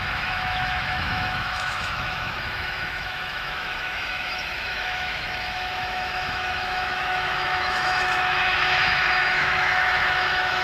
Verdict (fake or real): fake